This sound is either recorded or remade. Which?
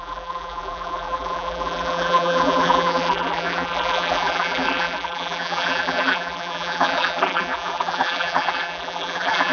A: remade